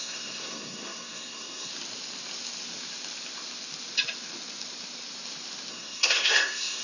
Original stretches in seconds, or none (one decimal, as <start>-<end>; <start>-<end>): 1.7-5.7

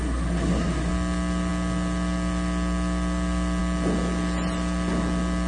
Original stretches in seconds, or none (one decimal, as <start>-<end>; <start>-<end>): 0.9-5.5

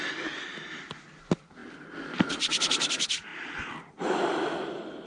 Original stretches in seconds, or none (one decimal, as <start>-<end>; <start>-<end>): 0.0-5.1

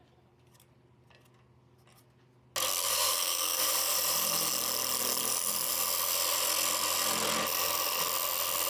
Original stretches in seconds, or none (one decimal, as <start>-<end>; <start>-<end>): 0.0-2.7; 3.7-8.7

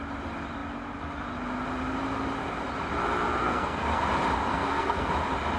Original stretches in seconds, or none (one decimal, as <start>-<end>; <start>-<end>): 0.0-3.4; 4.1-4.5; 5.1-5.6

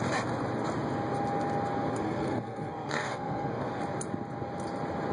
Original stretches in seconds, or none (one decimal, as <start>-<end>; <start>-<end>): 0.0-1.9; 3.8-5.1

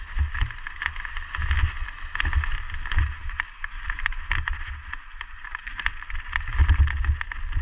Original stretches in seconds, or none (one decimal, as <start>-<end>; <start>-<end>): 0.0-7.6